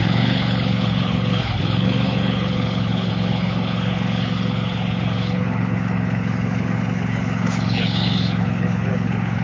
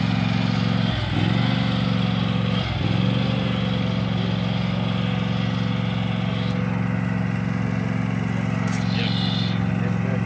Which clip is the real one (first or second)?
second